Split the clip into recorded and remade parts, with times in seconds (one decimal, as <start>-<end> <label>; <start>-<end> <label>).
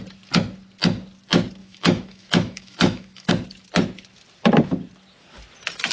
0.0-1.6 recorded; 1.6-3.3 remade; 3.3-5.9 recorded